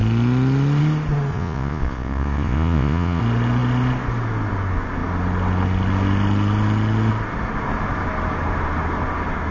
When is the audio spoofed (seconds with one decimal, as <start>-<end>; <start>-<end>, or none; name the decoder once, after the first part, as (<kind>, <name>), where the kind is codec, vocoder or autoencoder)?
1.3-3.2 (vocoder, Vocos)